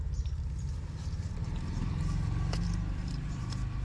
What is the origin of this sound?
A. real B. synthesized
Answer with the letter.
B